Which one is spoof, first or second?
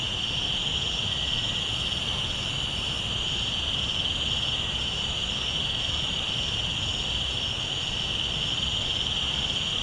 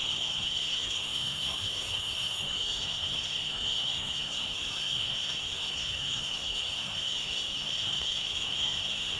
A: second